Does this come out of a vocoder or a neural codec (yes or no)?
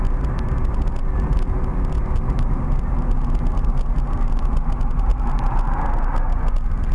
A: no